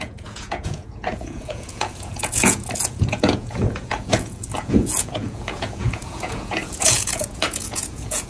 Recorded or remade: remade